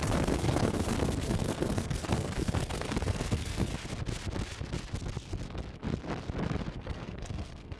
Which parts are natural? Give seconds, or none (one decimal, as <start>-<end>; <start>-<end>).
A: 3.7-6.7